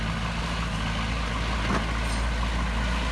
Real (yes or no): yes